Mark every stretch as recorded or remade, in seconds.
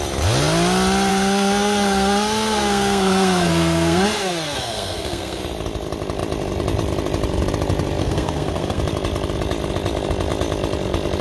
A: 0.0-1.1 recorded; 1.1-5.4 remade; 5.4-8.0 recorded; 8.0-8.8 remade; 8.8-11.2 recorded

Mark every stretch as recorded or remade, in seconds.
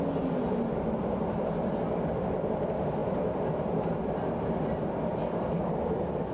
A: 0.0-6.3 recorded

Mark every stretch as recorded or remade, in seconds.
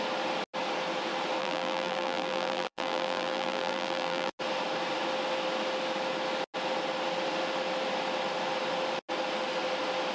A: 0.0-1.4 recorded; 1.4-4.3 remade; 4.3-10.1 recorded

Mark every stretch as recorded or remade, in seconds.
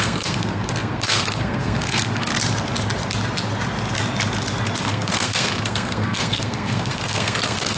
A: 0.0-2.3 remade; 2.3-4.8 recorded; 4.8-7.8 remade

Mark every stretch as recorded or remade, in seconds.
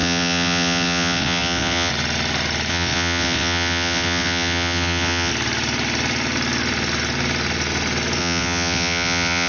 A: 0.0-1.9 remade; 1.9-2.7 recorded; 2.7-5.3 remade; 5.3-8.2 recorded; 8.2-9.5 remade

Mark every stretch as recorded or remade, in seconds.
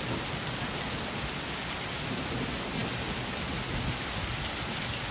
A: 0.0-5.1 recorded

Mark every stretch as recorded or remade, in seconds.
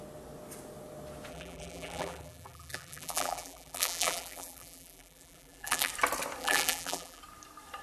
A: 0.0-1.3 recorded; 1.3-5.9 remade; 5.9-6.4 recorded; 6.4-7.2 remade; 7.2-7.8 recorded